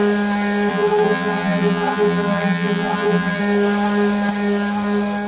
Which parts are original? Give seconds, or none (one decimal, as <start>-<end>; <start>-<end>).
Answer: 0.0-0.7; 3.4-5.3